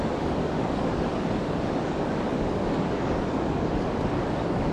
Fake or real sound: fake